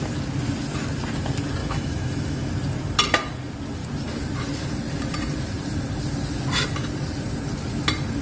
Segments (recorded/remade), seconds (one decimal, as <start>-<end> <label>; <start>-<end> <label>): 0.0-1.6 recorded; 1.6-2.5 remade; 2.5-8.2 recorded